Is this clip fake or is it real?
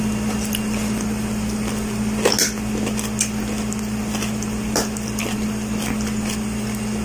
real